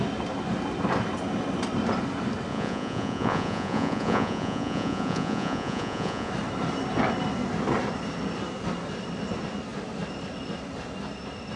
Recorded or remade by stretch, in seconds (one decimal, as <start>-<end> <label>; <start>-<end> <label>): 0.0-2.5 recorded; 2.5-6.3 remade; 6.3-11.6 recorded